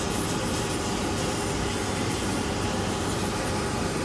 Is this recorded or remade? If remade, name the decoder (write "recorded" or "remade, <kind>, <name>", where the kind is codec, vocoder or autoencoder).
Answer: recorded